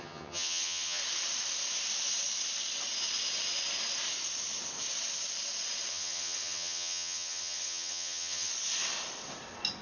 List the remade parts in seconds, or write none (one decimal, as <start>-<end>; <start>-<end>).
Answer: 0.0-1.0; 5.9-8.5